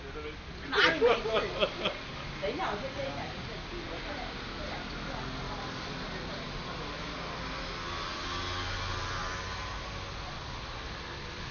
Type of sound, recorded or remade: recorded